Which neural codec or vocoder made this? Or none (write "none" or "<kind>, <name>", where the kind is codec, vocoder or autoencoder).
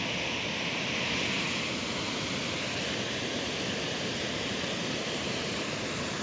none